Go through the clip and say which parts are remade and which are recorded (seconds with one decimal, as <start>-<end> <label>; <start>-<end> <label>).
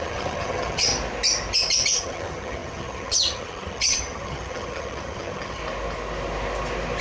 0.0-0.9 remade; 0.9-2.0 recorded; 2.0-5.6 remade; 5.6-7.0 recorded